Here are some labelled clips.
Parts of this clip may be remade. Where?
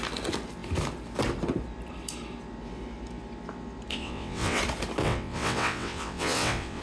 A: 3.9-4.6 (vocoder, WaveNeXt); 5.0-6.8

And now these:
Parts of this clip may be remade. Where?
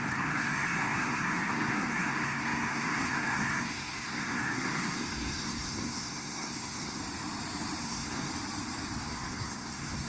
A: 0.0-7.0 (codec, SNAC); 7.8-8.3; 9.0-10.1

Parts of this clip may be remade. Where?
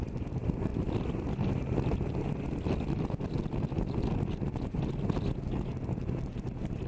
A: none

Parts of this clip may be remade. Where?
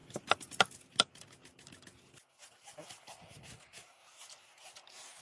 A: none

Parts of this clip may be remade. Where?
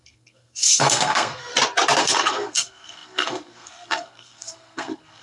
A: 0.0-1.5 (codec, SNAC); 2.0-5.2